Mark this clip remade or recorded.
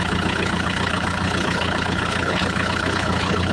remade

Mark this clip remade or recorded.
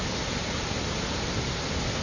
recorded